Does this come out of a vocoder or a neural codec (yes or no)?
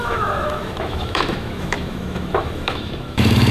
yes